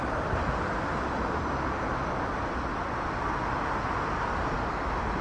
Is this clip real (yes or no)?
yes